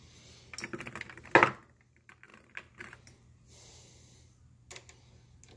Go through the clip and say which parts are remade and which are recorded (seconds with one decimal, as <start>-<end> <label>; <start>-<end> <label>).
0.0-5.6 recorded